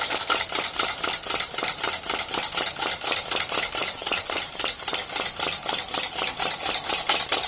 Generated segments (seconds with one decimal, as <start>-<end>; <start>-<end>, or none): 3.8-4.5